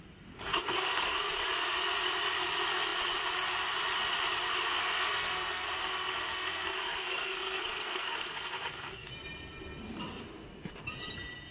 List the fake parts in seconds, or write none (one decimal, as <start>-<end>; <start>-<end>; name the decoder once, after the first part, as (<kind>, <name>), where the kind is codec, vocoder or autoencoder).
0.5-1.3 (codec, SNAC); 4.7-9.1